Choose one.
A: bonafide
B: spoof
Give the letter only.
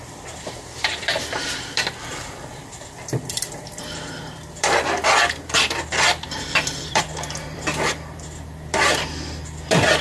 B